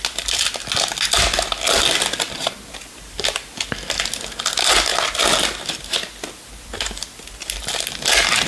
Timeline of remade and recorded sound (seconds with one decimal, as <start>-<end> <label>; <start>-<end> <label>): 0.0-8.5 recorded